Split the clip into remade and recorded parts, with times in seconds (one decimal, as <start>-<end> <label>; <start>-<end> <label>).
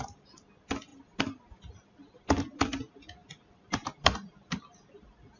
0.0-5.4 recorded